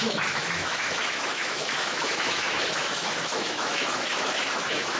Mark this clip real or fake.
fake